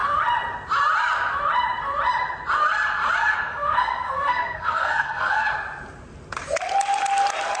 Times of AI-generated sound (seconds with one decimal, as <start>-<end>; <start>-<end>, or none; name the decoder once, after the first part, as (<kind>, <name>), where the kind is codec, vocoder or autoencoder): 3.3-5.5 (codec, SNAC)